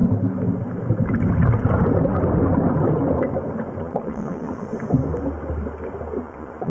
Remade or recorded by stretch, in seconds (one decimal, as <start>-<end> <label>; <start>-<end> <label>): 0.0-3.8 recorded; 3.8-4.7 remade; 4.7-6.2 recorded; 6.2-6.7 remade